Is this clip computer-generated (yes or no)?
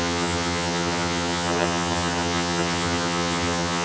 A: yes